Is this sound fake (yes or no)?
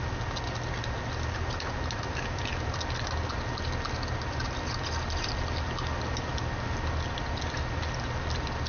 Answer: no